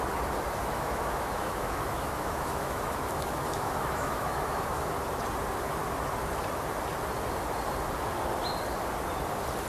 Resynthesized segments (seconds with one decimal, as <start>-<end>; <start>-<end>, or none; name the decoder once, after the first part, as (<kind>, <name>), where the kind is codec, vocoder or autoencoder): 0.6-4.9 (autoencoder, DAC-VAE)